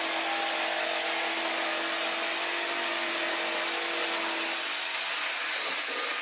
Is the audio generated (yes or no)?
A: no